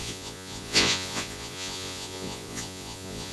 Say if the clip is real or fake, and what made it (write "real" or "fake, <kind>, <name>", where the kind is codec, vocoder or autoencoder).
fake, vocoder, Vocos